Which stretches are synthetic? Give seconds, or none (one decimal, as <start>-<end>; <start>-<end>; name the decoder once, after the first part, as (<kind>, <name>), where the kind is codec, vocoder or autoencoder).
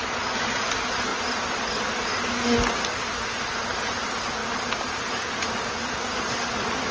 none